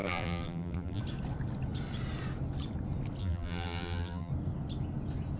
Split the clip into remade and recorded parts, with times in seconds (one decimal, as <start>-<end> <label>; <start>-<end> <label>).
0.0-1.0 remade; 1.0-3.2 recorded; 3.2-4.3 remade; 4.3-5.4 recorded